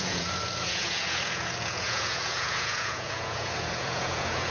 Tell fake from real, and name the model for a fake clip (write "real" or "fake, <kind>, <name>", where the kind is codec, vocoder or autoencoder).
fake, vocoder, Vocos